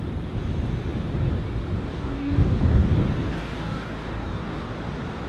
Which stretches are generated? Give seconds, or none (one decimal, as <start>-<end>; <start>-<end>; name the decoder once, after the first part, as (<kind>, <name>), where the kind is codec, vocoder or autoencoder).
1.9-2.9 (codec, DAC); 3.3-4.7